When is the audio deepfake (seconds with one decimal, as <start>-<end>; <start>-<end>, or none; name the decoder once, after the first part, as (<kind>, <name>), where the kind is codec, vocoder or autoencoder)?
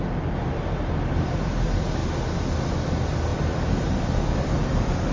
none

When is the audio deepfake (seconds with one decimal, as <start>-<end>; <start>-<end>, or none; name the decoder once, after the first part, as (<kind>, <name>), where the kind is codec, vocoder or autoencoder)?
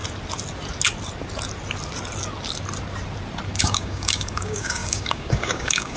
3.6-6.0 (codec, DAC)